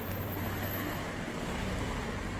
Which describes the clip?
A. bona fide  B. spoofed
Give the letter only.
A